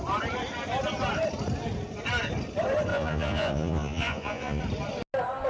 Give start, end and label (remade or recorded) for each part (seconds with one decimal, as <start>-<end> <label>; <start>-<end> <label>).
0.0-2.9 recorded; 2.9-4.6 remade; 4.6-5.5 recorded